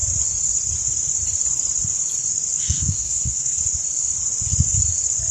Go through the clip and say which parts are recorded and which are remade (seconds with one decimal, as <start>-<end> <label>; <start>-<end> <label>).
0.0-2.6 recorded; 2.6-3.6 remade; 3.6-5.3 recorded